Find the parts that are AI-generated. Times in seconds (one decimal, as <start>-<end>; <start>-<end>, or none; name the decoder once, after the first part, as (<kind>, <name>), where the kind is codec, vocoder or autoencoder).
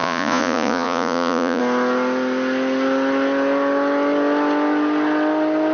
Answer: 0.0-1.6 (vocoder, Vocos)